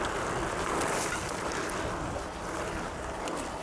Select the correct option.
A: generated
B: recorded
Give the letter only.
B